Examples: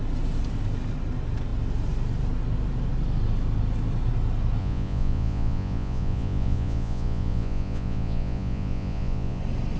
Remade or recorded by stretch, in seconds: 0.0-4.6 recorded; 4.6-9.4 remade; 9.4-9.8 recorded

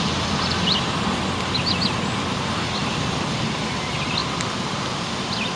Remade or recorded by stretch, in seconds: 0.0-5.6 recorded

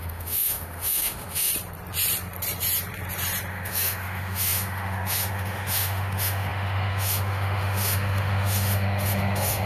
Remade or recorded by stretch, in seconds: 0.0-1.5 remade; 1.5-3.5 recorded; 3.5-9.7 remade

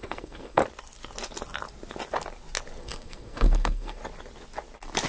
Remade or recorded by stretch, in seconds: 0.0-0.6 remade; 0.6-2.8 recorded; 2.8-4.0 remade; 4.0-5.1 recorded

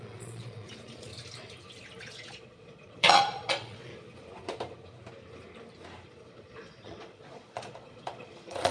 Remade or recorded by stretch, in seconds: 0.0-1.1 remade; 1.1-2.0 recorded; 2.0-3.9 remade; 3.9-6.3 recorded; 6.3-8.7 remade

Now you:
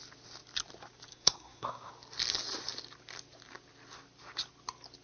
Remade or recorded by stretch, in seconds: 0.0-1.1 recorded; 1.1-1.9 remade; 1.9-5.0 recorded

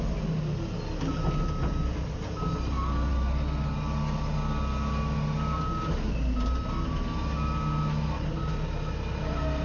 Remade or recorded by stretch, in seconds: 0.0-9.6 recorded

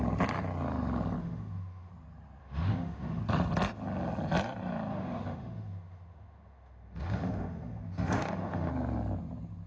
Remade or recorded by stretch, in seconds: 0.0-1.2 recorded; 1.2-1.9 remade; 1.9-2.4 recorded; 2.4-3.2 remade; 3.2-4.9 recorded; 4.9-8.7 remade; 8.7-9.7 recorded